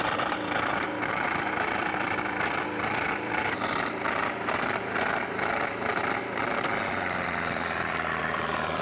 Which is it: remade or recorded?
remade